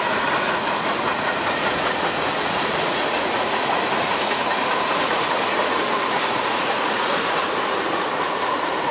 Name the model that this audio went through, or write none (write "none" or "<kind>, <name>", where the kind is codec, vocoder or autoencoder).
vocoder, Vocos